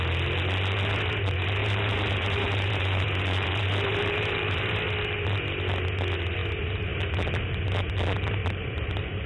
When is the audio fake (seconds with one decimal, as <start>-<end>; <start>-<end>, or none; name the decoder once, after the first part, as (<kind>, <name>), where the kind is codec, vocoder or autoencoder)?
1.6-4.8 (vocoder, BigVGAN v2); 8.4-8.9